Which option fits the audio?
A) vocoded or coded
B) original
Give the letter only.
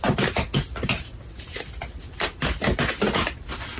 B